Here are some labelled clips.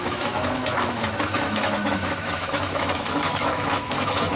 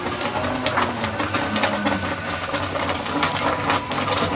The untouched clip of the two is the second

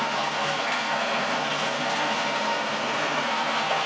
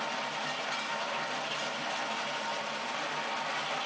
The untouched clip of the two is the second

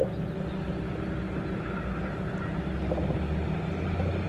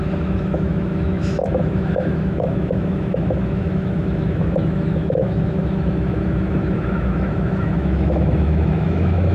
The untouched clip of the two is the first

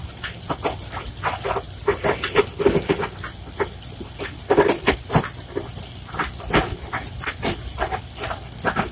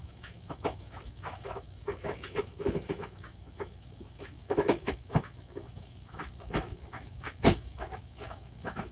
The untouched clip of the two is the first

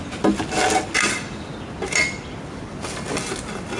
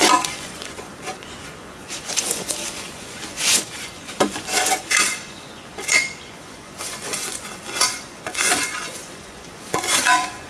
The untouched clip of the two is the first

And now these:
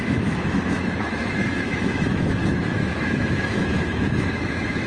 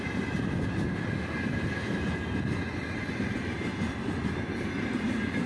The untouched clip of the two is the second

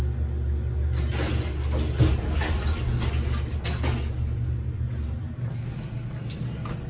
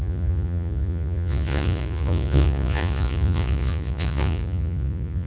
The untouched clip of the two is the first